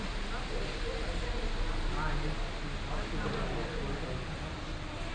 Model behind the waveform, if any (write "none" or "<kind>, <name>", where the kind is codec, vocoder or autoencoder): none